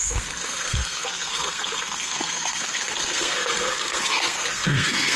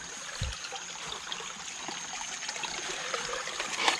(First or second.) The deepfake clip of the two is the first